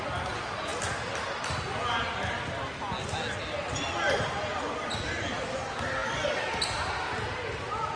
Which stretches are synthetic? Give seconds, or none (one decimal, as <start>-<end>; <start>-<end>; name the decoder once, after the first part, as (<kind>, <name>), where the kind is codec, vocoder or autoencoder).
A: none